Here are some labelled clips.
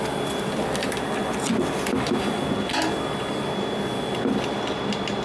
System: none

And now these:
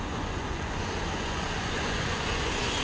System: vocoder, Vocos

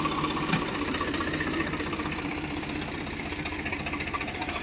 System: vocoder, BigVGAN v2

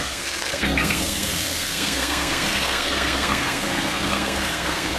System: codec, SNAC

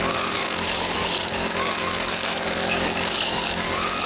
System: codec, DAC